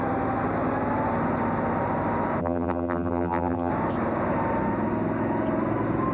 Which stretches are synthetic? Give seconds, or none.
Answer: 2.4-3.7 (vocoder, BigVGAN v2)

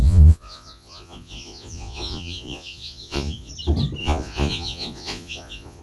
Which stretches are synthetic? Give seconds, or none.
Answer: 0.0-3.5 (vocoder, Vocos); 4.0-5.8

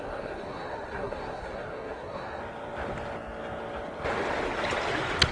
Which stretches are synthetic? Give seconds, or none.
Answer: 0.0-2.4 (codec, SNAC)